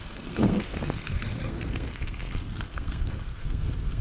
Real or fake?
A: fake